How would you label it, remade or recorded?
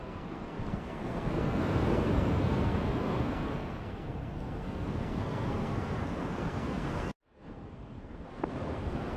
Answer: remade